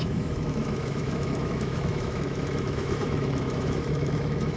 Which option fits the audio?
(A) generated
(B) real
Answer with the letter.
A